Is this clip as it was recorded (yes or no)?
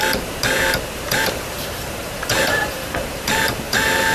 no